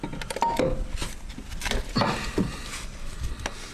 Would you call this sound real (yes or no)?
yes